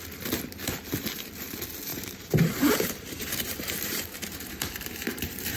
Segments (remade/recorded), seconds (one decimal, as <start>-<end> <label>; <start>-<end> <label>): 0.0-1.9 recorded; 1.9-5.6 remade